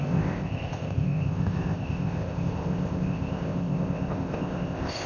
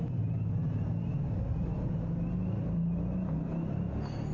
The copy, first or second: first